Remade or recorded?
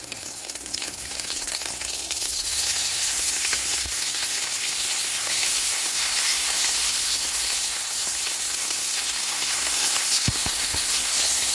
remade